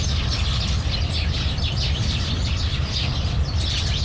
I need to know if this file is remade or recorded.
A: recorded